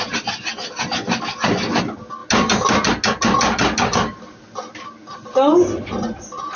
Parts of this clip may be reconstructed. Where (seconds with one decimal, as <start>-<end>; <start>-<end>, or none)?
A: none